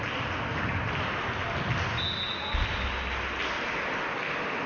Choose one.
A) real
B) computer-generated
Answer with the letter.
A